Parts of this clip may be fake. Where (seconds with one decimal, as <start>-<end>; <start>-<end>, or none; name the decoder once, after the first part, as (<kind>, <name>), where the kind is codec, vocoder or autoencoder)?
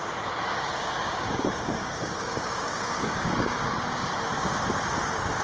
0.5-3.7 (codec, DAC)